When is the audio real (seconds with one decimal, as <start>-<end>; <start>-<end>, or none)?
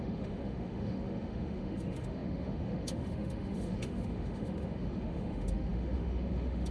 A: none